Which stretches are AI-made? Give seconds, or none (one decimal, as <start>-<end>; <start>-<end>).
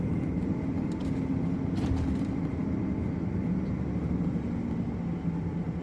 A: none